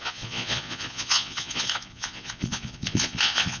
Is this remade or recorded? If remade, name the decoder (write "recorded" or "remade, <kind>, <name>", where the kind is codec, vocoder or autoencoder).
remade, vocoder, Vocos